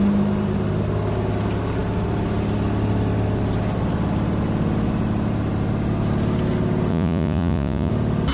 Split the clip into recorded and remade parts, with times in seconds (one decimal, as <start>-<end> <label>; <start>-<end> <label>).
0.0-6.9 recorded; 6.9-7.9 remade; 7.9-8.3 recorded